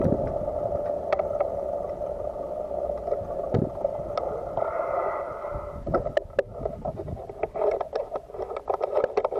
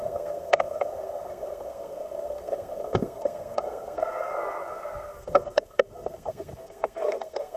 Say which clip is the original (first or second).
first